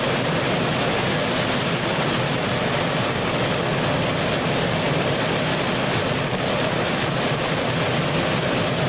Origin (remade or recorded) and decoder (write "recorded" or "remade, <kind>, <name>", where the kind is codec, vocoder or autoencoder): recorded